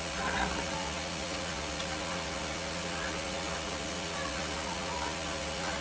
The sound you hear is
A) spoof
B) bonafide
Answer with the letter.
A